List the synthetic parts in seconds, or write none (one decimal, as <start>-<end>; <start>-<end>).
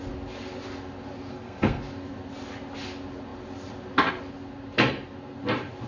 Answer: 1.3-1.8